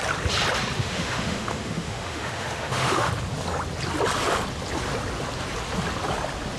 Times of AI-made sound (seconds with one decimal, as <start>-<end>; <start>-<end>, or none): 0.8-3.1